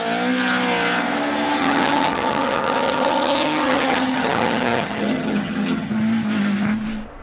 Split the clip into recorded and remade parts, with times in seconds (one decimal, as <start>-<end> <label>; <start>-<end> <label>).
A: 0.0-1.6 recorded; 1.6-5.9 remade; 5.9-7.2 recorded